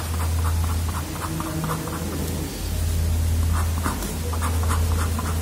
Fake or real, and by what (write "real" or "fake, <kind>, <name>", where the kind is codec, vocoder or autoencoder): real